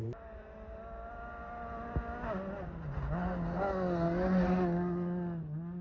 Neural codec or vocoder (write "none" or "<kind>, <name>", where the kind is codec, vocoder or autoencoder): none